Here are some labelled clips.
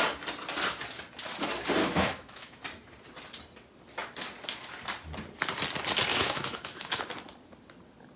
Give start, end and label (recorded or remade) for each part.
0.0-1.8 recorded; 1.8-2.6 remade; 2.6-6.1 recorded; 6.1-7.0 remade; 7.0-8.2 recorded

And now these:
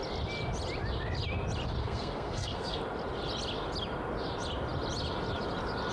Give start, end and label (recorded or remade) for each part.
0.0-1.8 recorded; 1.8-2.8 remade; 2.8-5.9 recorded

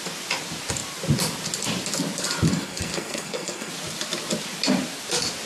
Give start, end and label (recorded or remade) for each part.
0.0-2.5 recorded; 2.5-3.7 remade; 3.7-5.5 recorded

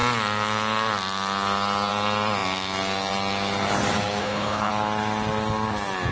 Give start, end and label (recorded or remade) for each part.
0.0-4.2 recorded; 4.2-4.7 remade; 4.7-6.1 recorded